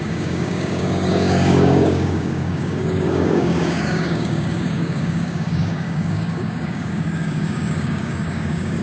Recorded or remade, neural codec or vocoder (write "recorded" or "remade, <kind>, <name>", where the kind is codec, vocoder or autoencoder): remade, codec, DAC